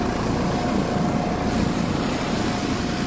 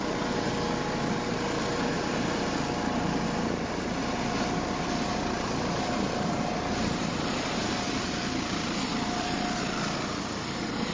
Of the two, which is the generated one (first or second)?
second